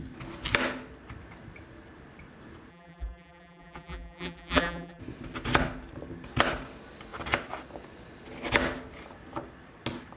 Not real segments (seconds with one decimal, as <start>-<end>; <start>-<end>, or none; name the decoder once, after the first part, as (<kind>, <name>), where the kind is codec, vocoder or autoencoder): 2.7-5.0 (vocoder, BigVGAN v2)